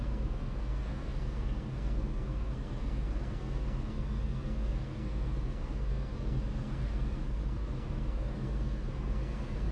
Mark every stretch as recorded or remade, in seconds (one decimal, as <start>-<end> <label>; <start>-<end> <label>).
0.0-9.7 remade